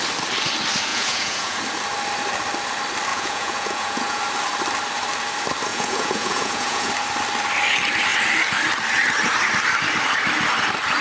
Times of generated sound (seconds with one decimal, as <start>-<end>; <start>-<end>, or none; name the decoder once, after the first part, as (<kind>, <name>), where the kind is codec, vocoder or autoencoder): 0.9-1.6 (vocoder, Vocos); 3.1-4.2; 5.7-6.9